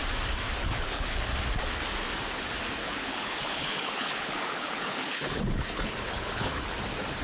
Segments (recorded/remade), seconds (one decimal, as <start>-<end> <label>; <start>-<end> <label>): 0.0-0.6 recorded; 0.6-1.3 remade; 1.3-2.8 recorded; 2.8-6.8 remade; 6.8-7.2 recorded